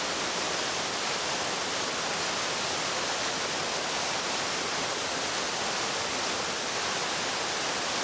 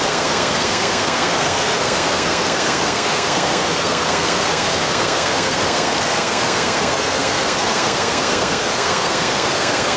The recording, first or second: first